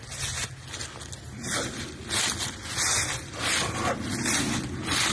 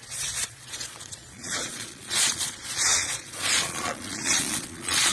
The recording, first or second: first